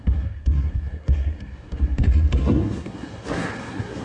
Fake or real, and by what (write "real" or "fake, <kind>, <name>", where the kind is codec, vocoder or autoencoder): fake, codec, SNAC